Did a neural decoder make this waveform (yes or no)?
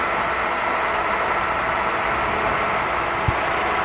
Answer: no